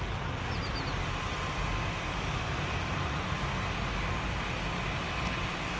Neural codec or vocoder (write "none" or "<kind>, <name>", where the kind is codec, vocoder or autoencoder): none